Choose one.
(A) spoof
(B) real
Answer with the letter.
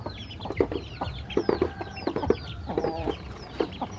B